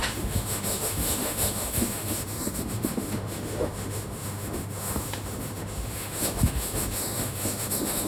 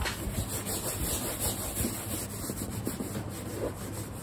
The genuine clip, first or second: second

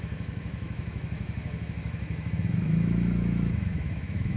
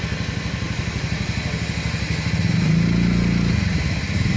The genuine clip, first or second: second